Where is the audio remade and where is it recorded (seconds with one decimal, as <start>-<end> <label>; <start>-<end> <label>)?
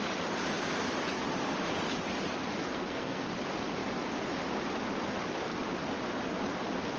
0.0-2.7 recorded; 2.7-3.3 remade; 3.3-7.0 recorded